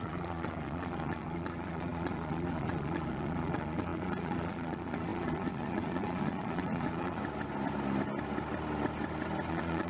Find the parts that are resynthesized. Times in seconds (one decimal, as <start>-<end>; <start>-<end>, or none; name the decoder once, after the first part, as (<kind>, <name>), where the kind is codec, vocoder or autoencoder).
0.0-7.2 (vocoder, Vocos); 9.5-9.9